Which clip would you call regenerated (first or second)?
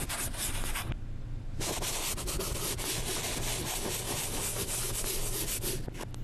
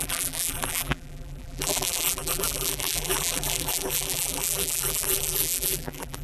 second